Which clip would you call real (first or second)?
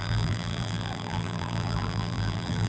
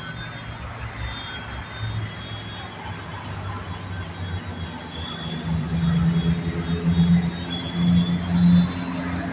second